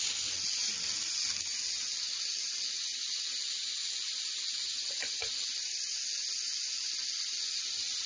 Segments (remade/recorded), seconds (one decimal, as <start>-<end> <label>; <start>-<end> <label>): 0.0-8.1 recorded